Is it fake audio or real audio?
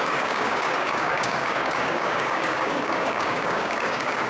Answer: fake